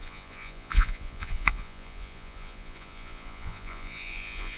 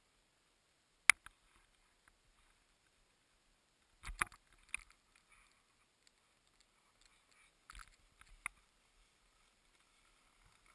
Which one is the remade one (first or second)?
first